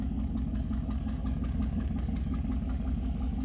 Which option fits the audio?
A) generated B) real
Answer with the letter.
A